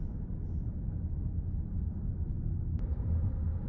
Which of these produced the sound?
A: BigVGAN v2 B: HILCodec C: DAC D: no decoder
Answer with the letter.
D